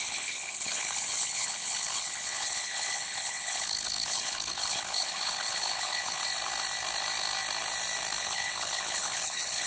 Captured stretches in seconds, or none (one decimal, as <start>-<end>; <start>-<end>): 6.2-8.2